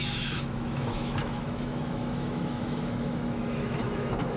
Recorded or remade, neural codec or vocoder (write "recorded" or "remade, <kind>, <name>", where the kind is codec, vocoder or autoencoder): remade, autoencoder, DAC-VAE